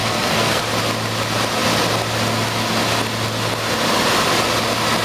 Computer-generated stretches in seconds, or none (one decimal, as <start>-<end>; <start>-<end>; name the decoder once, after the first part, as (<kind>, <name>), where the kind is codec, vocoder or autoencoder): 0.0-0.6 (codec, SNAC)